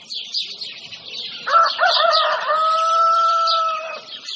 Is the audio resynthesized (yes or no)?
yes